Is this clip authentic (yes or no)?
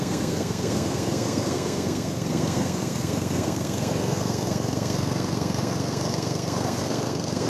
no